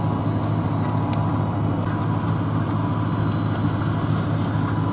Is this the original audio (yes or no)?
yes